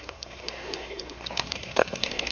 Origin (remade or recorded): remade